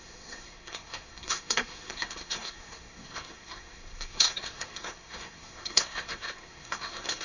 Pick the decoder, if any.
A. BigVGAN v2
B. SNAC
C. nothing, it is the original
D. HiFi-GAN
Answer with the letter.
B